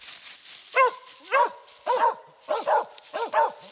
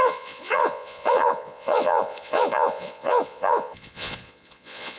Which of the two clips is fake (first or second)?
second